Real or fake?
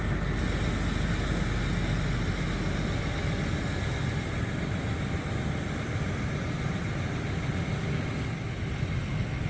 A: real